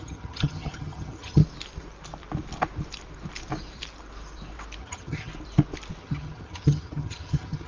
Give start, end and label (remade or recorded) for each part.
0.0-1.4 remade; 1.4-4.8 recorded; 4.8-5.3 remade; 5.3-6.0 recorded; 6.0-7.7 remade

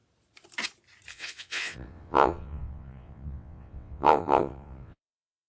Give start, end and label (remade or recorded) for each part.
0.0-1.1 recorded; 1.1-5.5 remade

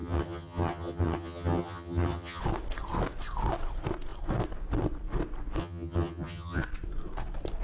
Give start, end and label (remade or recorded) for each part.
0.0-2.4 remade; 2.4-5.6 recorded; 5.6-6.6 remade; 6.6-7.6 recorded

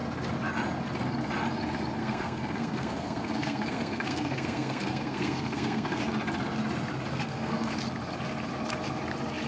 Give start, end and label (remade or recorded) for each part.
0.0-2.0 recorded; 2.0-6.0 remade; 6.0-7.1 recorded; 7.1-7.7 remade; 7.7-9.5 recorded